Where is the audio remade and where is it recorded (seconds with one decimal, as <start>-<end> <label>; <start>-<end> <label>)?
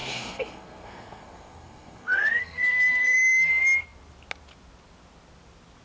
0.0-3.5 remade; 3.5-5.8 recorded